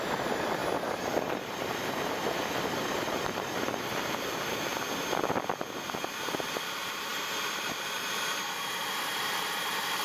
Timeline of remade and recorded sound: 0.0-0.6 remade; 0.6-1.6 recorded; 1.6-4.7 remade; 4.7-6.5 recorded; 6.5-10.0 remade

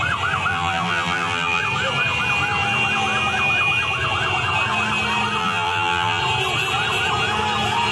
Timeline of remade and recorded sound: 0.0-0.5 recorded; 0.5-1.6 remade; 1.6-5.4 recorded; 5.4-6.2 remade; 6.2-7.9 recorded

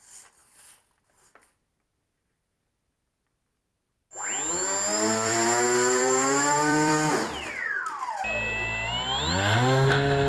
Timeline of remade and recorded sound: 0.0-4.9 recorded; 4.9-7.1 remade; 7.1-10.3 recorded

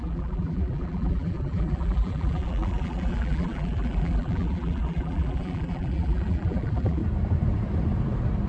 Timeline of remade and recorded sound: 0.0-7.0 remade; 7.0-8.5 recorded